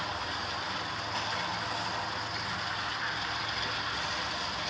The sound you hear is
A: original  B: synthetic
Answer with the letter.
A